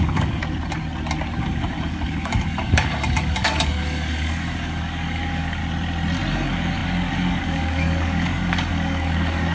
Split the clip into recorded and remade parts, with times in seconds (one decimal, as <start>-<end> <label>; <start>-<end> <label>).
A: 0.0-0.4 remade; 0.4-1.4 recorded; 1.4-5.6 remade; 5.6-6.3 recorded; 6.3-9.5 remade